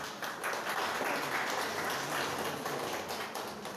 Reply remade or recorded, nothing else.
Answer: recorded